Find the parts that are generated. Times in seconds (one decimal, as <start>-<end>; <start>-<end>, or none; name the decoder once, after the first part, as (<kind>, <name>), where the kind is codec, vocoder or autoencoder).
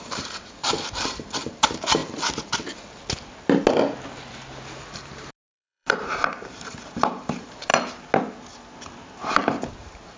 0.0-2.0 (vocoder, BigVGAN v2); 4.8-7.7; 9.7-10.2